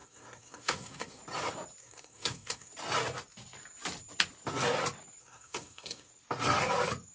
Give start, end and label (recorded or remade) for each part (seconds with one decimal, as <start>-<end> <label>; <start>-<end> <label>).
0.0-1.2 remade; 1.2-1.8 recorded; 1.8-2.7 remade; 2.7-5.2 recorded; 5.2-6.1 remade; 6.1-7.1 recorded